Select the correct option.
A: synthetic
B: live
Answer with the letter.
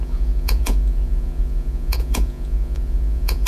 A